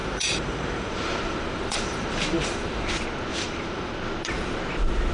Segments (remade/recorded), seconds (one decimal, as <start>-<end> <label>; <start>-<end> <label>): 0.0-2.9 remade; 2.9-3.3 recorded; 3.3-3.9 remade; 3.9-5.1 recorded